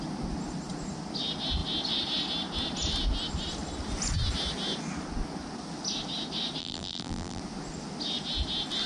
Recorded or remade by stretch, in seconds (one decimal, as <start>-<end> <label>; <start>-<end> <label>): 0.0-6.6 recorded; 6.6-7.4 remade; 7.4-8.9 recorded